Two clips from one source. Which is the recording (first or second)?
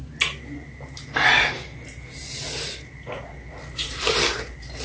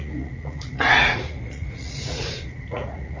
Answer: first